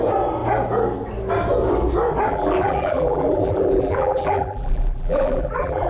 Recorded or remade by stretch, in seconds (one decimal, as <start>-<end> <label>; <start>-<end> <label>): 0.0-2.3 recorded; 2.3-5.9 remade